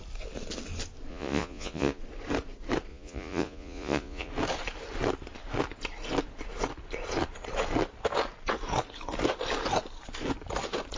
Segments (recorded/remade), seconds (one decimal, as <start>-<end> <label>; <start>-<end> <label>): 0.0-1.1 recorded; 1.1-2.0 remade; 2.0-2.9 recorded; 2.9-4.3 remade; 4.3-11.0 recorded